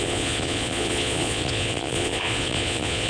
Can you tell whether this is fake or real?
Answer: fake